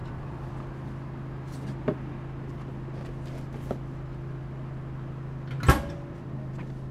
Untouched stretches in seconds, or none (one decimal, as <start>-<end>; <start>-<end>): 0.5-6.9